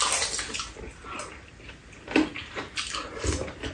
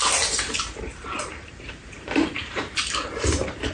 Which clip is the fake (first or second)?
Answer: second